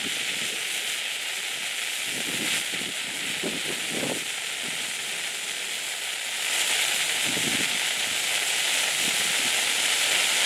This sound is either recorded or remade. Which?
recorded